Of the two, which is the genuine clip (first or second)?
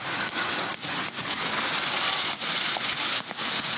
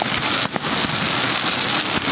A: second